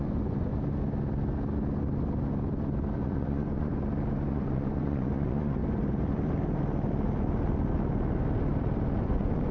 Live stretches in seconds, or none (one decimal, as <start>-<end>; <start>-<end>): 0.5-3.0; 3.7-4.3; 5.6-9.0